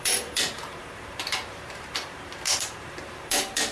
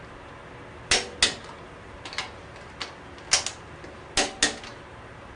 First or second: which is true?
second